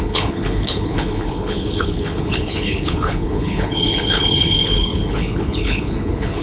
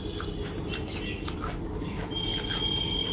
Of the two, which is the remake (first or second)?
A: first